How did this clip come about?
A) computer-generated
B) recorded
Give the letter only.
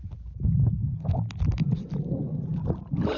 B